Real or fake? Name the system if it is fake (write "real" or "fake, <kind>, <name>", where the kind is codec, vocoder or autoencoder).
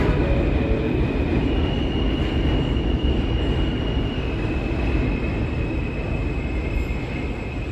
real